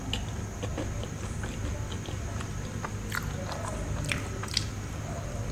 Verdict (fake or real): real